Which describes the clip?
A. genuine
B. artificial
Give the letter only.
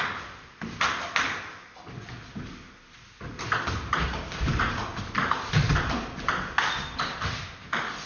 A